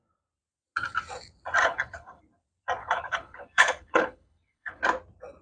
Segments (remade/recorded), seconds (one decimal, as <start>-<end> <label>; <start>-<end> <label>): 0.0-1.6 recorded; 1.6-2.2 remade; 2.2-2.8 recorded; 2.8-4.8 remade; 4.8-5.4 recorded